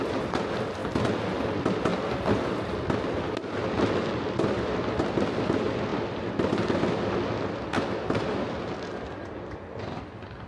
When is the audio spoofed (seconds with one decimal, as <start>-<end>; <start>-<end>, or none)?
none